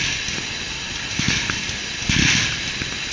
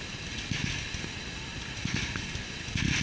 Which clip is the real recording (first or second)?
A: second